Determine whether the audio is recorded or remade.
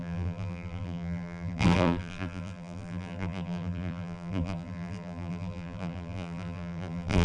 remade